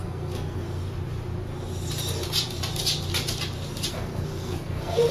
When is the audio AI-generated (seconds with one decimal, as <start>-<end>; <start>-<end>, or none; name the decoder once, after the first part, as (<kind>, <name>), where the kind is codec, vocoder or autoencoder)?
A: 0.0-0.8 (codec, SNAC); 3.9-5.1